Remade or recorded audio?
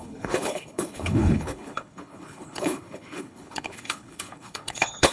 remade